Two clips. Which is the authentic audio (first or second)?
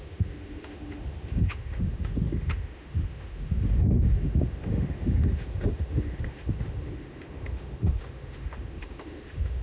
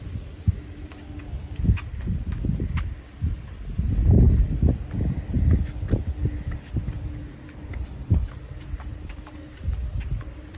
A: second